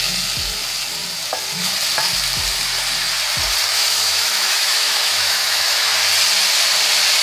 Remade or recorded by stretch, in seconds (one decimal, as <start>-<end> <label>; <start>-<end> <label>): 0.0-3.7 recorded; 3.7-5.9 remade; 5.9-7.2 recorded